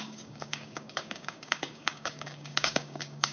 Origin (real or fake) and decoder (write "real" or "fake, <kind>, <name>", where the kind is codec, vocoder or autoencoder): fake, codec, DAC